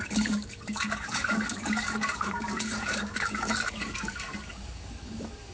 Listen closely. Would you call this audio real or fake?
fake